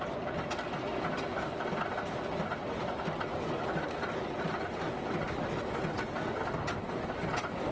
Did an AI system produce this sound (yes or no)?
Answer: no